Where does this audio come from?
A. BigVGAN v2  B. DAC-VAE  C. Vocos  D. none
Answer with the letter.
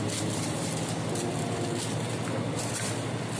D